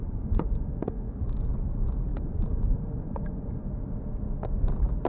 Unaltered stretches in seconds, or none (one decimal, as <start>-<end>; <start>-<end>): 1.1-2.1; 3.7-5.1